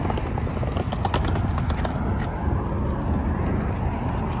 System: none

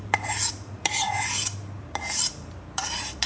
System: vocoder, BigVGAN v2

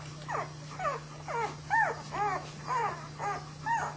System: none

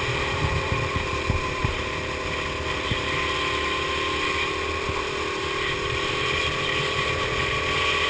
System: none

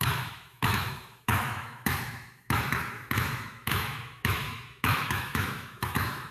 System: autoencoder, DAC-VAE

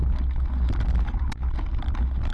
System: none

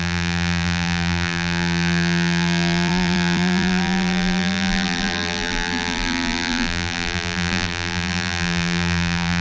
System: vocoder, BigVGAN v2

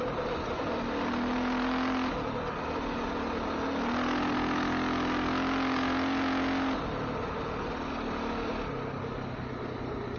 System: none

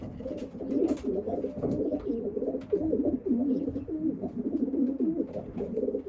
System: none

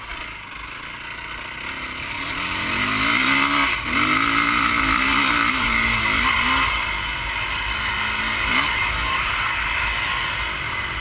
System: none